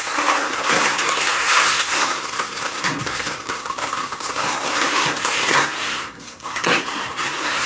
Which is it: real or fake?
fake